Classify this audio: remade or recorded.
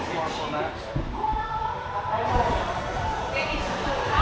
remade